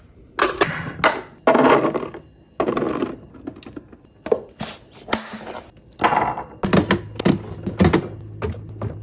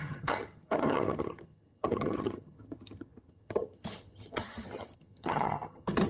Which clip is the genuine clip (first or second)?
first